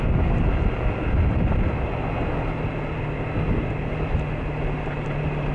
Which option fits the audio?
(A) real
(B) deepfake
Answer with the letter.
A